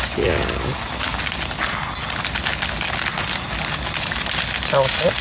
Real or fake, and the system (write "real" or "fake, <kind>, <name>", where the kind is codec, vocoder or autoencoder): real